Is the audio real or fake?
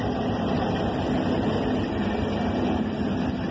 real